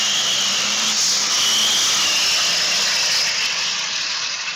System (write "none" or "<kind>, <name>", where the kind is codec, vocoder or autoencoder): none